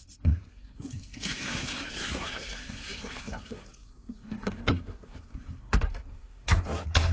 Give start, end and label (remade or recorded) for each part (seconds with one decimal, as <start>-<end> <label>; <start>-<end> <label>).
0.0-7.1 remade